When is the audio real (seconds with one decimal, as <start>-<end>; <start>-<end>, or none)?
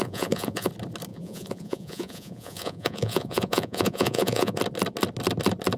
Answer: 0.7-1.1; 4.6-5.8